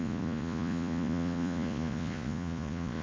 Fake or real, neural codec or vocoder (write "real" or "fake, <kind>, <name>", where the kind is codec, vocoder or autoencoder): fake, vocoder, Vocos